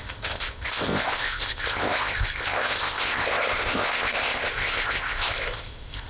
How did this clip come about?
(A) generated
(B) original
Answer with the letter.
A